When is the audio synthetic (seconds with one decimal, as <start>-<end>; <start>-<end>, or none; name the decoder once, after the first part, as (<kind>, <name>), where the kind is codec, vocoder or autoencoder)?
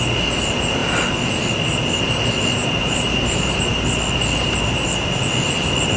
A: 2.6-3.7 (vocoder, BigVGAN v2)